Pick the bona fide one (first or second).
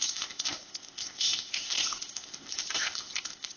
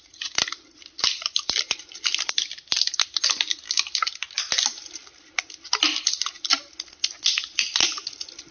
second